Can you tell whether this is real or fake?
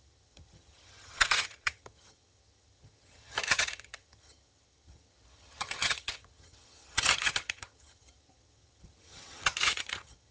fake